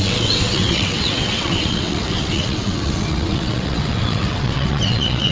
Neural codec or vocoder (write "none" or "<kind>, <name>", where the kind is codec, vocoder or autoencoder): vocoder, WaveNeXt